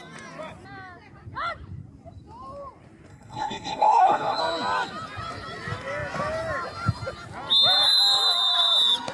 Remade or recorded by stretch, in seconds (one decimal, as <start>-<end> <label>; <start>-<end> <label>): 0.0-3.1 recorded; 3.1-4.4 remade; 4.4-9.1 recorded